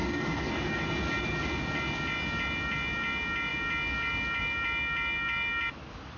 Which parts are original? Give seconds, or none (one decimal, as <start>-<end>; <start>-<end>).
0.5-6.2